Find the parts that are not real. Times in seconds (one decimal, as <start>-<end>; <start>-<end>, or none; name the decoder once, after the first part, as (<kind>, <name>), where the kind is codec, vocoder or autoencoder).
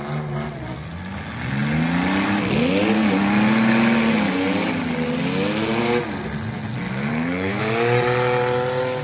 7.1-7.6 (codec, SNAC)